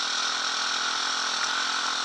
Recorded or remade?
recorded